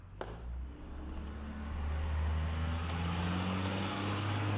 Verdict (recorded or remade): recorded